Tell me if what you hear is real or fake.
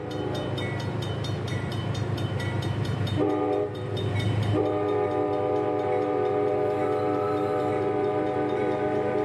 fake